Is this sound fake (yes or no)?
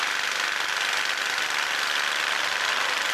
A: no